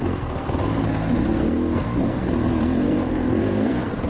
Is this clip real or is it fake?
fake